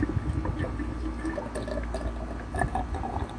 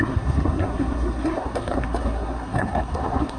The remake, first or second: second